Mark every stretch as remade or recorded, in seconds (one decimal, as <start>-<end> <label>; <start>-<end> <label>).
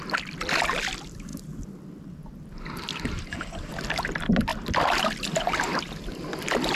0.0-6.8 recorded